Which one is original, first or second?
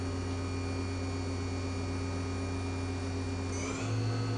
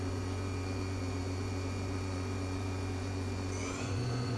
first